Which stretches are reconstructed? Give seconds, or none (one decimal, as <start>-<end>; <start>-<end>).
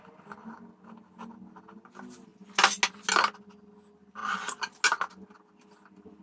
none